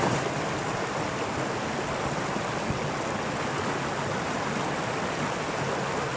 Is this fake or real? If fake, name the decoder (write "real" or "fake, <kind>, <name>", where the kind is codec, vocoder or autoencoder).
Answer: real